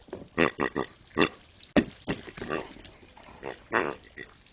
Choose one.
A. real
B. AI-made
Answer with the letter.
A